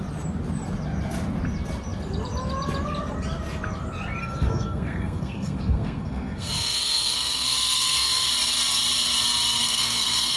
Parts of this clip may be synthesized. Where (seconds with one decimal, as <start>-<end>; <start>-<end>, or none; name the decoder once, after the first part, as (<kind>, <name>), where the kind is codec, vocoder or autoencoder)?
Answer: 4.2-8.3 (codec, SNAC); 9.6-10.4